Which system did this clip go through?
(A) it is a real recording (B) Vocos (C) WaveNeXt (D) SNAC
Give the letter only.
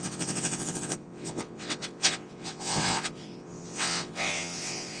C